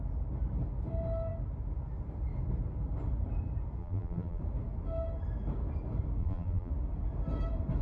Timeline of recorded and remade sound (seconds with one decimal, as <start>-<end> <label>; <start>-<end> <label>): 0.0-3.8 recorded; 3.8-4.4 remade; 4.4-6.2 recorded; 6.2-6.7 remade; 6.7-7.8 recorded